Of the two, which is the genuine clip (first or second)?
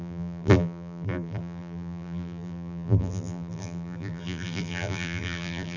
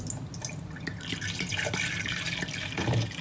second